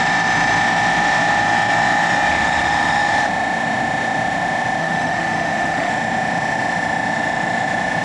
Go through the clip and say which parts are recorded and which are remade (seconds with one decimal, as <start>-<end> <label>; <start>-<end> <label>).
0.0-2.3 recorded; 2.3-3.3 remade; 3.3-4.8 recorded; 4.8-5.9 remade; 5.9-8.0 recorded